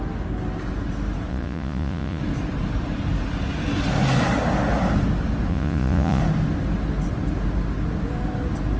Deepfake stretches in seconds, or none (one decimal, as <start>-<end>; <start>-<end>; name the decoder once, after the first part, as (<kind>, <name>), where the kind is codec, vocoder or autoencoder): 1.3-2.2 (vocoder, Vocos); 5.5-6.2